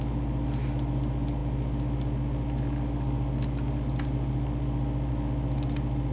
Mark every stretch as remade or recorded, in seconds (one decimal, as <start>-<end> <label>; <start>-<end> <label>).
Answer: 0.0-6.1 recorded